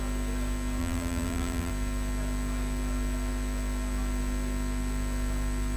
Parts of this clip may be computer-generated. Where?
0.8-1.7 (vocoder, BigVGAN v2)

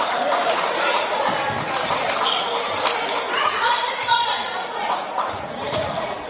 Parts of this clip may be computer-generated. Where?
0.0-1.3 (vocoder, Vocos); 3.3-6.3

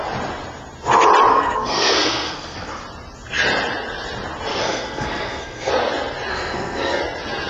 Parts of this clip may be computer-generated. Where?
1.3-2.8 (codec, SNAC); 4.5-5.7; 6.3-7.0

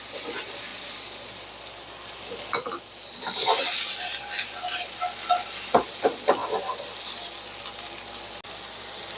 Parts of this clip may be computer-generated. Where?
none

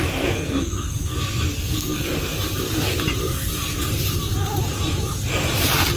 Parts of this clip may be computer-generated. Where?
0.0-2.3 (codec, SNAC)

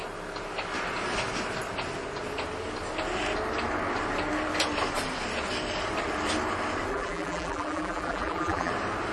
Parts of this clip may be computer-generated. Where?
6.9-8.7 (vocoder, BigVGAN v2)

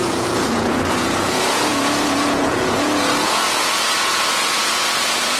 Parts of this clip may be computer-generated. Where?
0.0-5.4 (vocoder, Vocos)